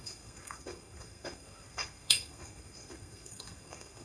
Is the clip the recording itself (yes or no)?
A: no